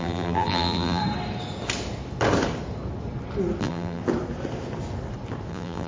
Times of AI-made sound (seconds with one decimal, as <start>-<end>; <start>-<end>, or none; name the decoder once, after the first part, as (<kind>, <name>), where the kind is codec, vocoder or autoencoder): 0.0-1.0 (vocoder, BigVGAN v2); 3.6-4.0; 5.5-5.9